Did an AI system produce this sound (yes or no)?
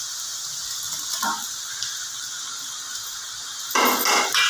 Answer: no